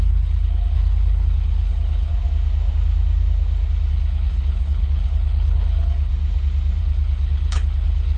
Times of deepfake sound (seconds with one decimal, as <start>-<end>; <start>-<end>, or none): 0.0-2.1; 3.9-6.1; 6.8-8.2